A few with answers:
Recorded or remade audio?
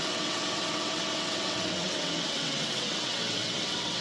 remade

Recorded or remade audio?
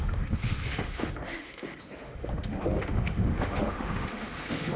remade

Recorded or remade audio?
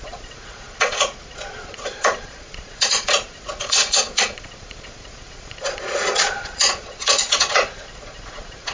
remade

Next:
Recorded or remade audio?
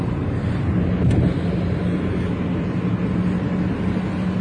recorded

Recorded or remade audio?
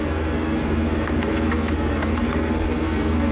remade